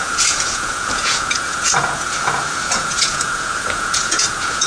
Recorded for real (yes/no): no